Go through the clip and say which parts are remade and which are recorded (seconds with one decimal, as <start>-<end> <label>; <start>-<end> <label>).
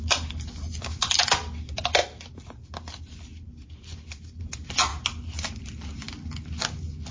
0.0-7.1 recorded